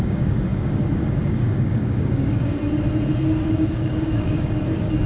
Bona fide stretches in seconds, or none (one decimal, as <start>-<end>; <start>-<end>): 2.6-3.5